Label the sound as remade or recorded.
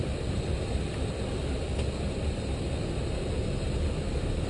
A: recorded